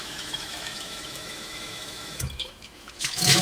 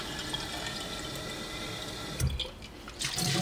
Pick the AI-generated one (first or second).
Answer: first